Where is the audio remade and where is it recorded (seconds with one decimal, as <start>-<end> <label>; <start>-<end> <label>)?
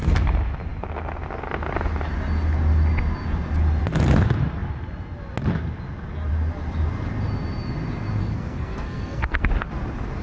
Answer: 0.0-8.2 recorded; 8.2-9.5 remade; 9.5-10.2 recorded